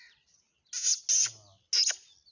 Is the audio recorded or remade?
recorded